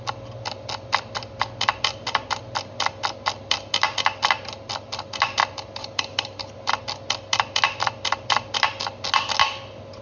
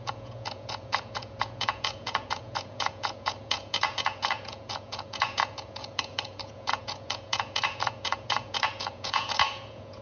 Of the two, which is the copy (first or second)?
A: second